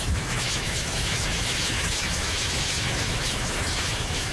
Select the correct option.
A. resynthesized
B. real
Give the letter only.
A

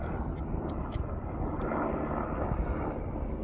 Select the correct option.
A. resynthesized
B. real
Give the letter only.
B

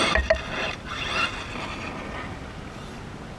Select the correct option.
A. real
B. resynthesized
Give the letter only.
A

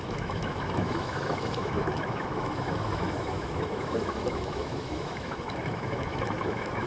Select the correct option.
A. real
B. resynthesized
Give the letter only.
B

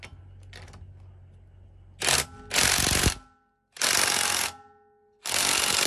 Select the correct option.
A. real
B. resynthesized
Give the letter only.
A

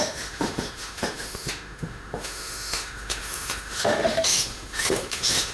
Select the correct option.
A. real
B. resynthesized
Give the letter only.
B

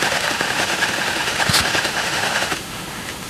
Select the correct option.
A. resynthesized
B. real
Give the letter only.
A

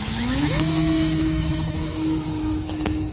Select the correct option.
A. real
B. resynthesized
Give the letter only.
B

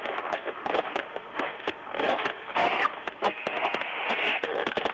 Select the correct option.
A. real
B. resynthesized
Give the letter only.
B